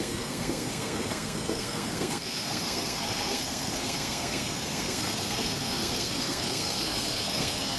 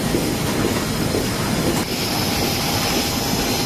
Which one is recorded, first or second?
second